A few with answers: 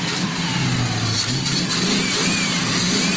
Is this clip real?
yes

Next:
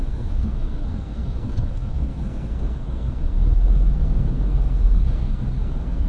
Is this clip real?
no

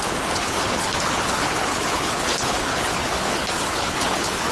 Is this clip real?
no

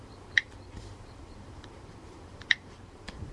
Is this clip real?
no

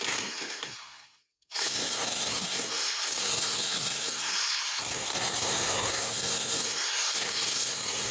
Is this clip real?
no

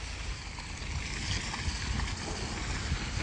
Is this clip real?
yes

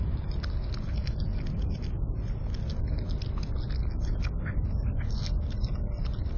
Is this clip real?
yes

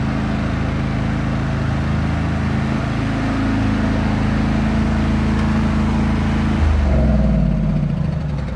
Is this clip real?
yes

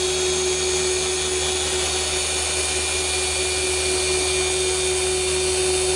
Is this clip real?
yes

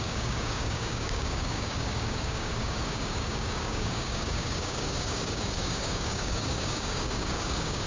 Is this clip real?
no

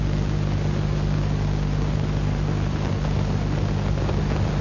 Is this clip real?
yes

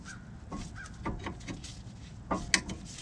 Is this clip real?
yes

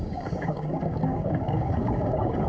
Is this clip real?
no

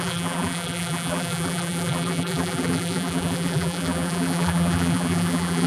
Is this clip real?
no